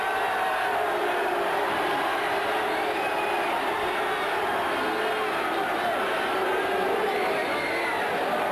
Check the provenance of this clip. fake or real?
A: real